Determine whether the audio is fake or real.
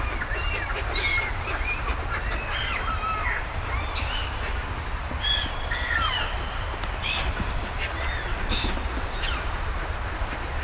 real